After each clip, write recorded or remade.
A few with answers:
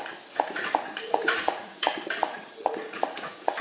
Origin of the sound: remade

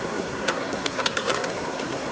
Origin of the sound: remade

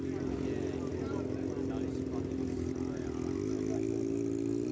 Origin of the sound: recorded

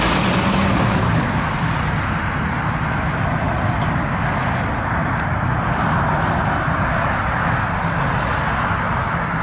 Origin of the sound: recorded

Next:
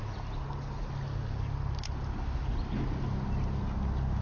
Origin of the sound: recorded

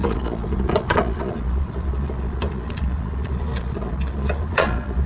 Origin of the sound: remade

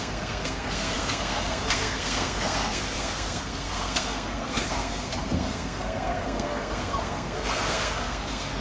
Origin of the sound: remade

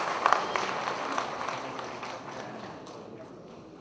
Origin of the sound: recorded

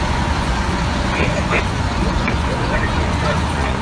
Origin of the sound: remade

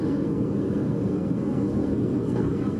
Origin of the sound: remade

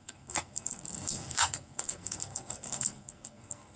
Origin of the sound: remade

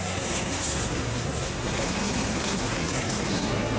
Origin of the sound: remade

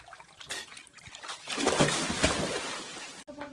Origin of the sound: recorded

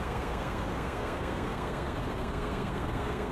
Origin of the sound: remade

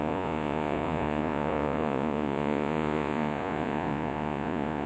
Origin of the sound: remade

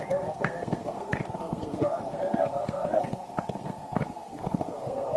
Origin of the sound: remade